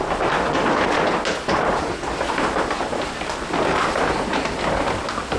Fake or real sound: real